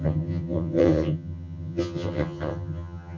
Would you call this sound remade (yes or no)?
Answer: yes